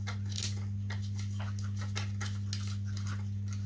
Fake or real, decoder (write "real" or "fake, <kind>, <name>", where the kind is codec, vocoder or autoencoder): real